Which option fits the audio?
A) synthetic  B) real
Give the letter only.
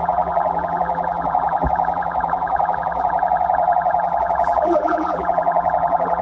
A